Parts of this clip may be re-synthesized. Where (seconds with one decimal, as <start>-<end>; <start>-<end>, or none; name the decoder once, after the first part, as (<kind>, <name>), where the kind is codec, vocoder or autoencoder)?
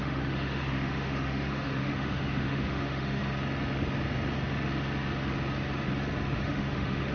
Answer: 0.0-3.2 (autoencoder, DAC-VAE); 6.4-7.1